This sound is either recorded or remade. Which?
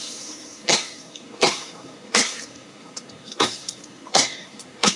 remade